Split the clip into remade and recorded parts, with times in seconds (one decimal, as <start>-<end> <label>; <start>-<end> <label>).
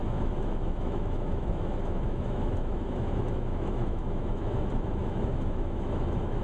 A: 0.0-6.4 remade